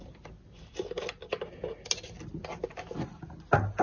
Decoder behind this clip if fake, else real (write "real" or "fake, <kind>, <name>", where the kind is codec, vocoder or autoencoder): real